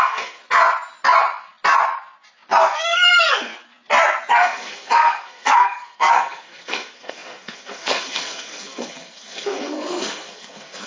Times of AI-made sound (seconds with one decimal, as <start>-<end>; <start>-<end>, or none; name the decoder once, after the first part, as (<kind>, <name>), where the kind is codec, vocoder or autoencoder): 0.0-0.4 (codec, SNAC); 2.6-3.5; 4.3-10.9